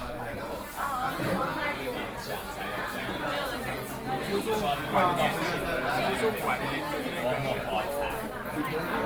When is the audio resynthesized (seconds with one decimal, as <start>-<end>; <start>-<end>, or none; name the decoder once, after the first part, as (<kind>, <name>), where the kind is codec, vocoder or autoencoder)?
4.3-5.0 (codec, DAC)